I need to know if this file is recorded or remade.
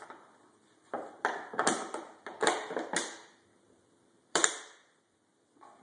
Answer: remade